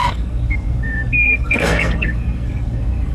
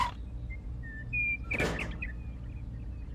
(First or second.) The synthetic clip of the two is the first